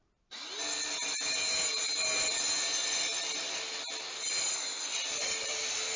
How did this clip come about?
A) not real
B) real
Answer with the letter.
B